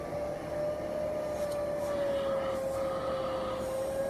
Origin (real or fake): real